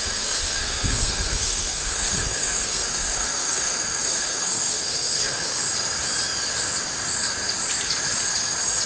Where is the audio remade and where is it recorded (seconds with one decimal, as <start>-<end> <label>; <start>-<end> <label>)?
0.0-5.6 remade; 5.6-8.9 recorded